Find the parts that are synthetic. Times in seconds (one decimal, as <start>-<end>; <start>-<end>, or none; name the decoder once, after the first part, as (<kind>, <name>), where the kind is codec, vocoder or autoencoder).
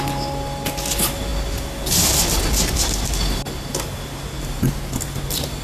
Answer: none